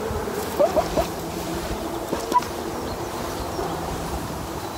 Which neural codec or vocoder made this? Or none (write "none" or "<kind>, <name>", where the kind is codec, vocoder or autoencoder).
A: vocoder, BigVGAN v2